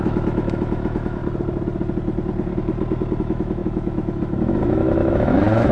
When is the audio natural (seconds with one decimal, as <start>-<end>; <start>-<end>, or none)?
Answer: 1.2-3.2